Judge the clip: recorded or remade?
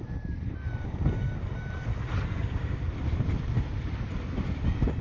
remade